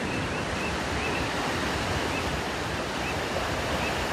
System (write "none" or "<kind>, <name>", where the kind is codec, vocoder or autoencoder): none